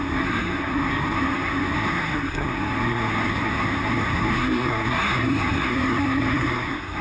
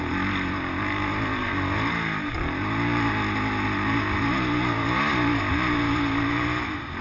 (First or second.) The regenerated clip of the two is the first